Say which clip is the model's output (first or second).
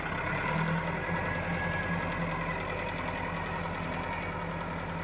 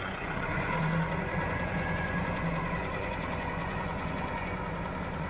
second